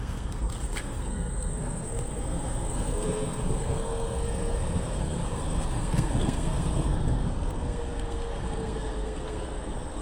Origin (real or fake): fake